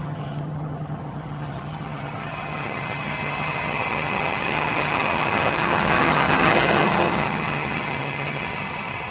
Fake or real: fake